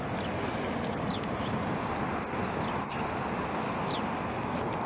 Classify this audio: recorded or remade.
recorded